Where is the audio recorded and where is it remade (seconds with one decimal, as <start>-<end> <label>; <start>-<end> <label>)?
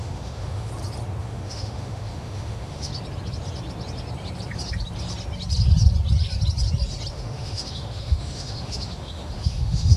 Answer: 0.0-0.7 remade; 0.7-1.2 recorded; 1.2-2.9 remade; 2.9-7.1 recorded; 7.1-10.0 remade